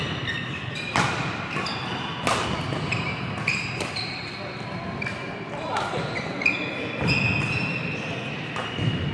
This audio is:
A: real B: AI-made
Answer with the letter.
A